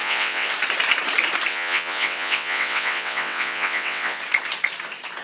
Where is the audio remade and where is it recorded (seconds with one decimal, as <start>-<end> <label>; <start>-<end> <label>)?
0.0-0.5 remade; 0.5-1.5 recorded; 1.5-4.2 remade; 4.2-5.2 recorded